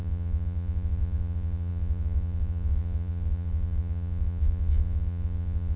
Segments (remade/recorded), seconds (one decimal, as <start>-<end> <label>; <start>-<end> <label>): 0.0-5.8 remade